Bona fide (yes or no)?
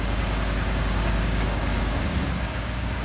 no